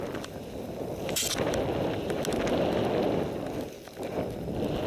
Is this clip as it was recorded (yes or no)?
yes